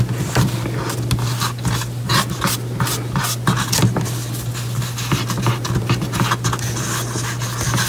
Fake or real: real